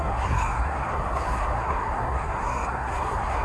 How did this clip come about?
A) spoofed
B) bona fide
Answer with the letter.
A